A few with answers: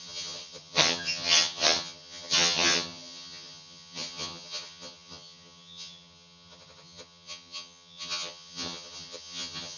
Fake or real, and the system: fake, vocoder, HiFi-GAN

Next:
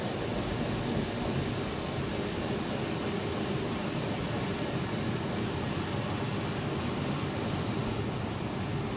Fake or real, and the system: real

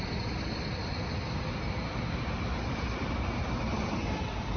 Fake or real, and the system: real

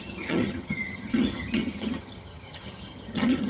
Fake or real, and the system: fake, vocoder, HiFi-GAN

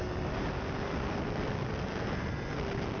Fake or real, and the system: real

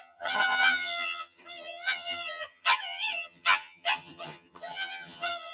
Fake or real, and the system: fake, vocoder, HiFi-GAN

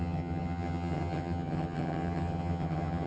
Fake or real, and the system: fake, vocoder, HiFi-GAN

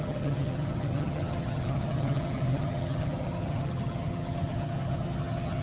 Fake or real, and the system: fake, vocoder, HiFi-GAN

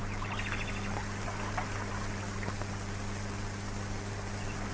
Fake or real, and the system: real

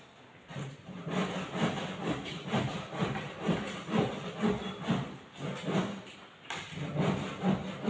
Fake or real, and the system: real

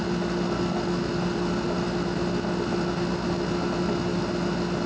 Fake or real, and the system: real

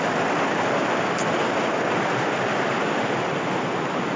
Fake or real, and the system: real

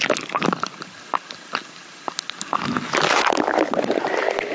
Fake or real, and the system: real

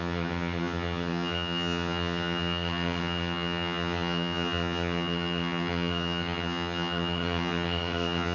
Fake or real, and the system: fake, vocoder, HiFi-GAN